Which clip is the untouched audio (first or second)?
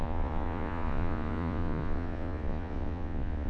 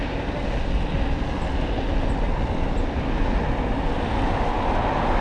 second